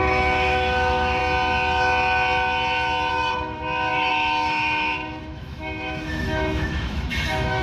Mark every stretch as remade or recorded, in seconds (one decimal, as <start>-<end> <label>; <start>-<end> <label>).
0.0-1.2 remade; 1.2-3.1 recorded; 3.1-7.6 remade